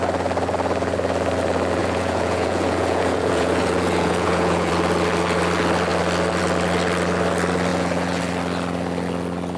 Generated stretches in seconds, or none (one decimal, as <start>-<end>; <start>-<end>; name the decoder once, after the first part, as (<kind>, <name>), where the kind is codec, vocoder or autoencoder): 1.8-4.7 (vocoder, Vocos); 7.7-8.2